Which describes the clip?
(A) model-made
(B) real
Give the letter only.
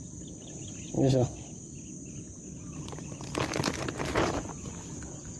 B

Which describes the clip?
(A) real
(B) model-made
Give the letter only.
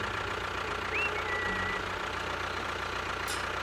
A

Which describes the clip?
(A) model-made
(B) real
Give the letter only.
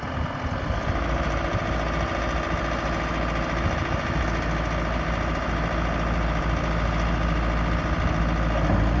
B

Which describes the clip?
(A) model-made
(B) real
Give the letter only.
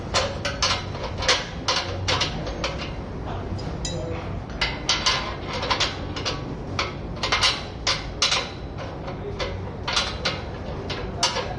B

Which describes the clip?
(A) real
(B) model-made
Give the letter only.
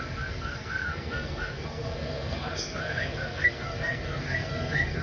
B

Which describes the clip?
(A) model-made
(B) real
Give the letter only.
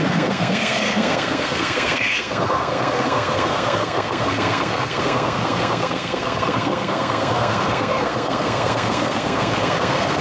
A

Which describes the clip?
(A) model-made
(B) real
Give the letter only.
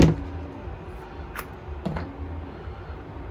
B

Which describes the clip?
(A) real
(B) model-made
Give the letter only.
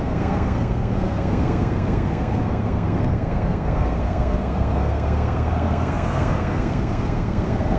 B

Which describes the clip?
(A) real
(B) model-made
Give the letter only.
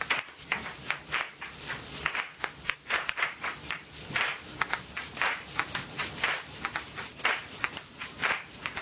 A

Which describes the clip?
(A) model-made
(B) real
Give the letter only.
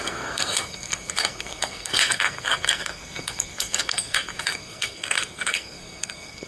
A